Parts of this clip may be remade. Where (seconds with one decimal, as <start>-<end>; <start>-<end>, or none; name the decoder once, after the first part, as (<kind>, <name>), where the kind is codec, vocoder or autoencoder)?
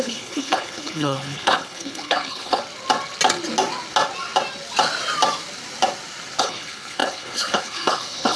0.0-2.6 (codec, HILCodec); 6.4-8.4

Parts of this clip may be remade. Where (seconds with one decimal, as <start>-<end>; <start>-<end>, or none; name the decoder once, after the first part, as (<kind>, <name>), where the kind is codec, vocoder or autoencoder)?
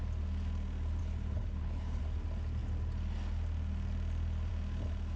1.0-2.0 (codec, HILCodec)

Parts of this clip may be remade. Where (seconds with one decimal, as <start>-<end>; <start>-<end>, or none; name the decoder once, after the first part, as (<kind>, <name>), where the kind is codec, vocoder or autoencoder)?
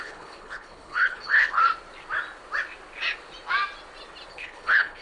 0.0-1.6 (codec, HILCodec); 4.3-5.0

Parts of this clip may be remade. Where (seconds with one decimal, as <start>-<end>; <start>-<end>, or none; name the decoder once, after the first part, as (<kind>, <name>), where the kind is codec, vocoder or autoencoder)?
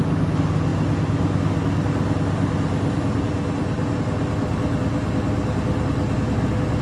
none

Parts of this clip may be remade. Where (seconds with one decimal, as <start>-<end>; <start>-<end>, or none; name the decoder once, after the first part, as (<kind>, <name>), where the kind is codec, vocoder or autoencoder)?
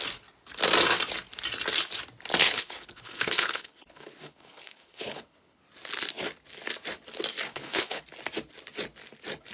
2.4-5.6 (codec, HILCodec); 7.5-8.0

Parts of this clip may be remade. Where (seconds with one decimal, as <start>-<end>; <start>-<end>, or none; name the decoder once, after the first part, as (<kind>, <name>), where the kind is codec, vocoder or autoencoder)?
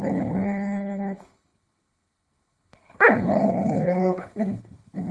0.0-5.1 (codec, HILCodec)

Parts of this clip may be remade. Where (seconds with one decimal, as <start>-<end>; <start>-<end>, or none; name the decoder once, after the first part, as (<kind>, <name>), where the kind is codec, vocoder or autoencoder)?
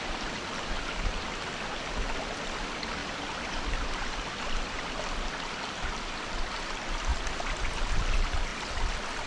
none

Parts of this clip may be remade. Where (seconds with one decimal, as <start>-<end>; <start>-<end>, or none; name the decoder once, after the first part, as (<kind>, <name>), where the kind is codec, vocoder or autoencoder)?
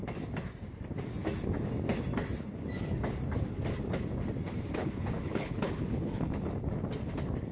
4.8-6.5 (codec, HILCodec)